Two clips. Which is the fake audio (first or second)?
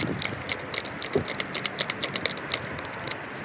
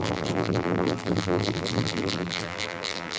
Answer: second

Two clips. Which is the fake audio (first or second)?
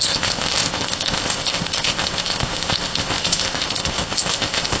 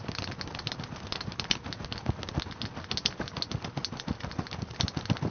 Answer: first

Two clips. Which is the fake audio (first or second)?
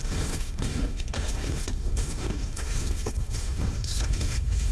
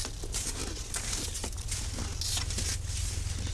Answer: first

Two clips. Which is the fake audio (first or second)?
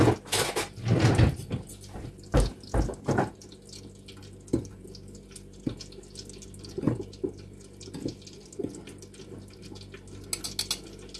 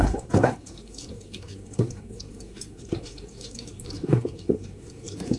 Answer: second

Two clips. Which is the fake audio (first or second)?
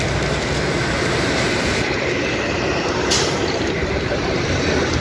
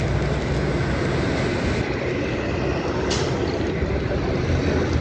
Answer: first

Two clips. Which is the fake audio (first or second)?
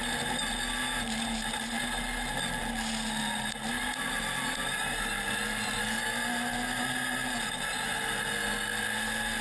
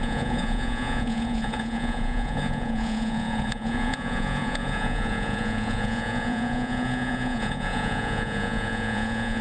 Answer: second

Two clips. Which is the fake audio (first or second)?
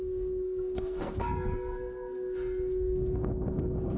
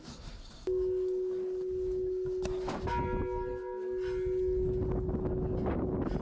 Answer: first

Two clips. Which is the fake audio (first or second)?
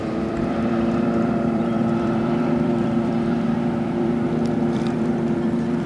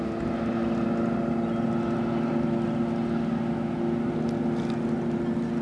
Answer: first